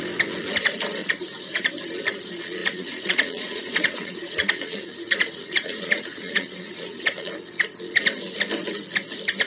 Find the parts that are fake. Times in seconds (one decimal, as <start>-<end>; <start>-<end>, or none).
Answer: 1.0-1.7; 2.6-7.3